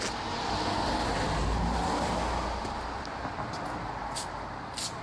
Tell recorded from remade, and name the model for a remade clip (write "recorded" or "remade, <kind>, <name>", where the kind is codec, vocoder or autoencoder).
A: recorded